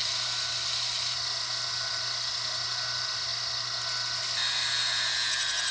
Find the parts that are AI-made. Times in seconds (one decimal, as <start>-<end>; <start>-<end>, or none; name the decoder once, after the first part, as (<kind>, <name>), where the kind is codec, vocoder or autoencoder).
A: none